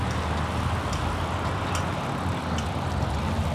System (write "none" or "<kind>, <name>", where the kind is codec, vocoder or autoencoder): none